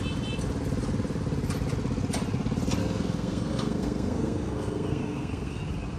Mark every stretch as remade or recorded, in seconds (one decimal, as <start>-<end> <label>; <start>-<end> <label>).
0.0-2.8 recorded; 2.8-5.6 remade; 5.6-6.0 recorded